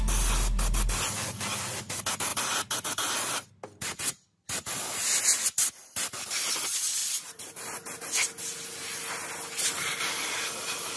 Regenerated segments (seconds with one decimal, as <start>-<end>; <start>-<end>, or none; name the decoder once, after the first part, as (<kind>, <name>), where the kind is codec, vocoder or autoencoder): 7.0-7.6 (vocoder, BigVGAN v2)